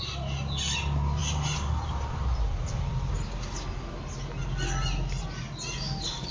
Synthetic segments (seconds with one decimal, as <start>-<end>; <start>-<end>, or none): 1.2-3.1